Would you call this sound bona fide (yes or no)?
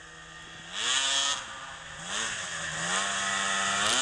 yes